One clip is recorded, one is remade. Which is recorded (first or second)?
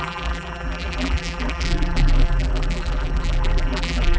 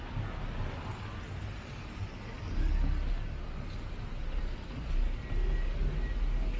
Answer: second